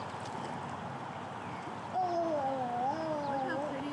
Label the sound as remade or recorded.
recorded